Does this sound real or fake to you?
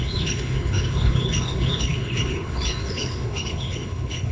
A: fake